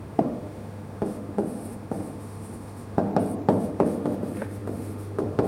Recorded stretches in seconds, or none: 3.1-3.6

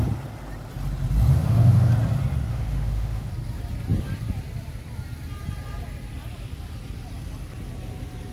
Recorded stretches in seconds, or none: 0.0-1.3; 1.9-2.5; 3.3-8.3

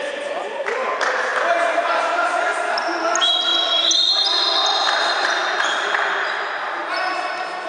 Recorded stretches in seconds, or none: 0.0-7.7

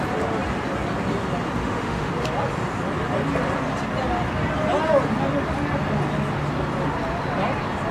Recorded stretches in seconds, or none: 0.0-1.6; 2.1-7.9

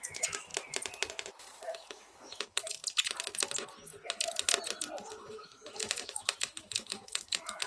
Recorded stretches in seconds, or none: 0.5-1.7; 2.8-5.3

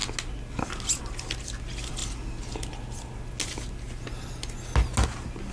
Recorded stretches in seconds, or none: 0.0-5.5

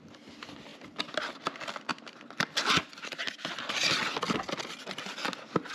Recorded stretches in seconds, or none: 0.0-5.7